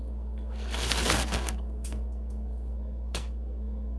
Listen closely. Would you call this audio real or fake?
fake